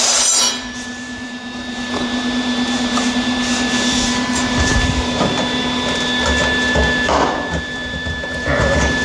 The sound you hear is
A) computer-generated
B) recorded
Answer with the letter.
A